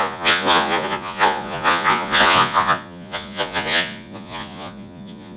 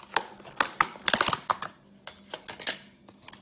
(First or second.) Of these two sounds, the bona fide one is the second